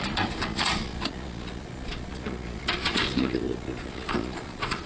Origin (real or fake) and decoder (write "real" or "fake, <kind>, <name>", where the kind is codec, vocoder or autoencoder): fake, vocoder, Vocos